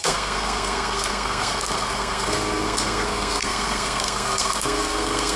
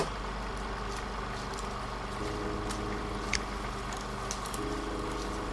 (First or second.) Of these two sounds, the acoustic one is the second